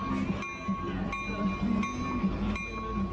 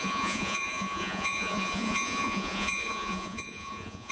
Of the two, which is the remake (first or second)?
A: second